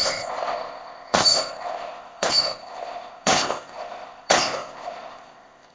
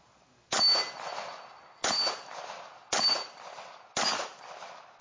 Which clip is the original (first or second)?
second